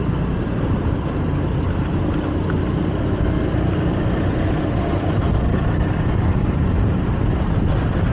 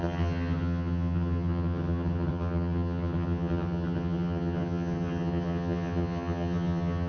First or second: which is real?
first